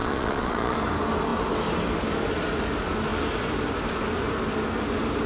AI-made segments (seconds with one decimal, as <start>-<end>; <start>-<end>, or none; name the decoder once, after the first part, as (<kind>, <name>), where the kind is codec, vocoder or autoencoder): 0.0-0.8 (vocoder, Vocos)